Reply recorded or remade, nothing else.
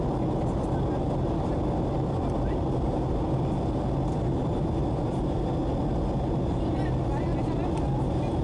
recorded